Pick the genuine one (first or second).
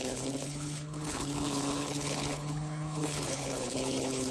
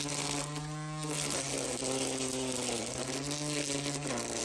second